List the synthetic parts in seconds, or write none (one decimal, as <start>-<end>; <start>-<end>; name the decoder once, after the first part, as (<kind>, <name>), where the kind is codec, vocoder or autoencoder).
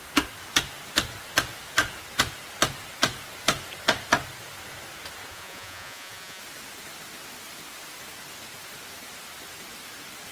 5.3-6.4 (vocoder, Vocos)